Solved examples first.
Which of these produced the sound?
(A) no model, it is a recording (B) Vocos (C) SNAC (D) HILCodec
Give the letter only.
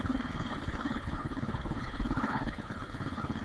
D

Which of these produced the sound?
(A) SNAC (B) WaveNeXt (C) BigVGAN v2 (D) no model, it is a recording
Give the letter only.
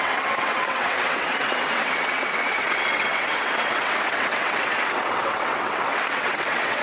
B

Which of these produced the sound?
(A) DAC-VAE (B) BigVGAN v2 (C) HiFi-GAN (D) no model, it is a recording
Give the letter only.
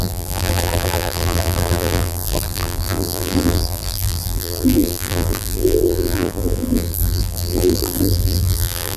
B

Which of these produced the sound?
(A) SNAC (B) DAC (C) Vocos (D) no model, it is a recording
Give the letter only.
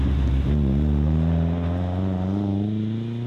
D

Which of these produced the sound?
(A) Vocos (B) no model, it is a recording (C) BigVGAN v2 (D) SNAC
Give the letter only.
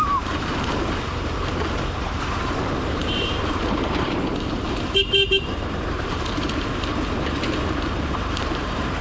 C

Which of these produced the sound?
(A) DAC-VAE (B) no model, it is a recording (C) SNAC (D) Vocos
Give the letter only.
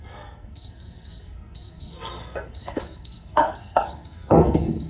C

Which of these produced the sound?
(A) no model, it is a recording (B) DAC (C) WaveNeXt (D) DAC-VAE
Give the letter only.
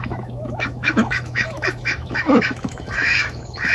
D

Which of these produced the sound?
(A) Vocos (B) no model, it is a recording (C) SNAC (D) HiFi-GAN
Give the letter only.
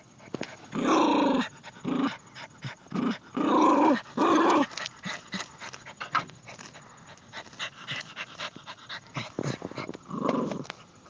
B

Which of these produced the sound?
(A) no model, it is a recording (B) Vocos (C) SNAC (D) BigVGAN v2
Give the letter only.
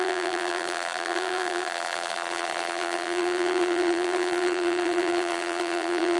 D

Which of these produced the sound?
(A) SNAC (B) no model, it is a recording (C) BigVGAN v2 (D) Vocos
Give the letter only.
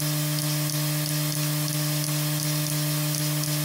B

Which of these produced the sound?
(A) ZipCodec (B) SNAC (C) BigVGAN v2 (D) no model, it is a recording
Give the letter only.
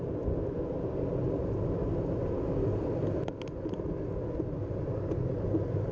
D